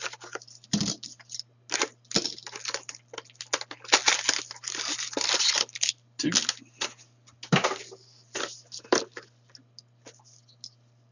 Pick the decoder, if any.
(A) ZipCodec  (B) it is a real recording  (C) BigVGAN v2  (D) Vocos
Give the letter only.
B